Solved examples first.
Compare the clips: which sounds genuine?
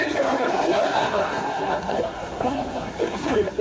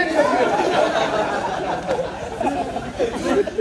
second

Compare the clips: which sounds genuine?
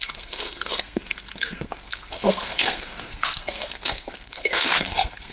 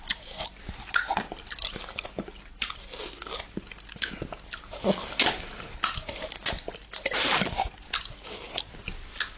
second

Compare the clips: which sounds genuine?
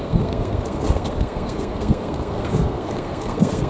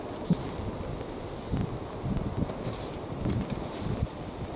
second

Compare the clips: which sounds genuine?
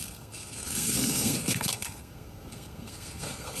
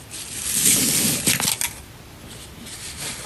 second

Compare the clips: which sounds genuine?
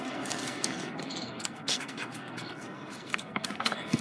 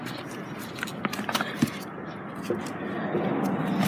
second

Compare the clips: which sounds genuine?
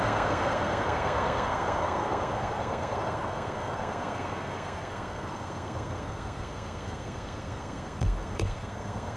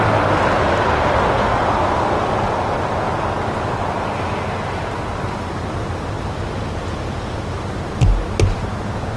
second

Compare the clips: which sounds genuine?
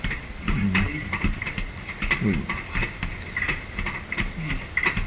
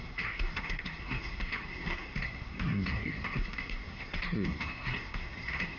first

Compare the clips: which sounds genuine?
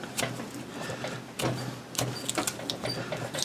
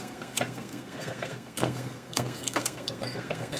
first